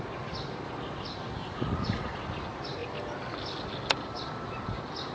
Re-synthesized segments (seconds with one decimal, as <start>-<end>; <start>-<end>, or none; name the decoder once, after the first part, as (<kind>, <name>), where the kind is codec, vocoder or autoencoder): 1.4-2.2 (vocoder, Vocos)